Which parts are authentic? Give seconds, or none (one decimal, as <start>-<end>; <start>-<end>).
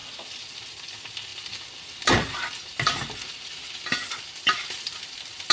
none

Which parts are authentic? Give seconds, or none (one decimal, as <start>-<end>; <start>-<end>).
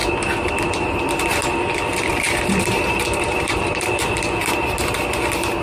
0.0-1.9; 4.1-5.6